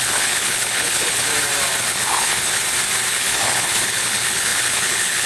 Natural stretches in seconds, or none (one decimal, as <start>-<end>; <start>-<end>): 1.3-1.8; 2.6-3.1